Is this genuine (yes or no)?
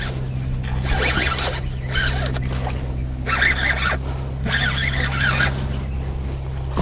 yes